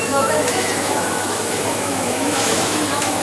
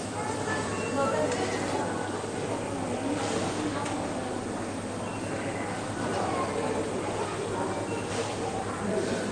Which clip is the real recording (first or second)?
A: second